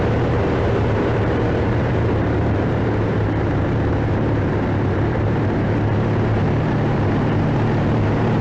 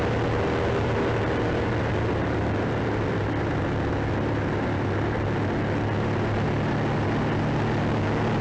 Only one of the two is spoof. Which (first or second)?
first